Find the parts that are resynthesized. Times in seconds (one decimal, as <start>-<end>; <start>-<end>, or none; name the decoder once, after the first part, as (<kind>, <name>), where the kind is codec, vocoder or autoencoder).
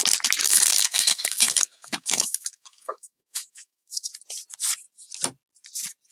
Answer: 0.4-4.1 (codec, SNAC)